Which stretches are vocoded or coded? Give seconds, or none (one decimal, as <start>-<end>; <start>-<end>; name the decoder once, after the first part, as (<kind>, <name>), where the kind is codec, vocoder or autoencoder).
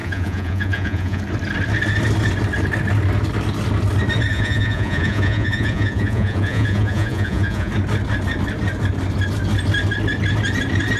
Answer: 0.0-1.2 (vocoder, Vocos); 4.3-7.7